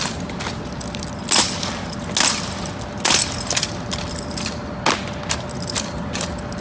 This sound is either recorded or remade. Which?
recorded